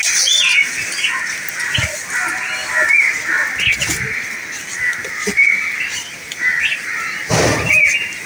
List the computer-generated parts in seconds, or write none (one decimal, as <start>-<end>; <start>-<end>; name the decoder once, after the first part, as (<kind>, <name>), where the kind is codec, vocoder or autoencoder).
2.6-3.9 (vocoder, BigVGAN v2); 5.0-6.9